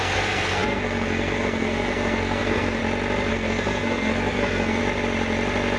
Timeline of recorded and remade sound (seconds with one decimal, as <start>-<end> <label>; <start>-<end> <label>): 0.0-2.8 remade; 2.8-3.3 recorded; 3.3-4.8 remade; 4.8-5.8 recorded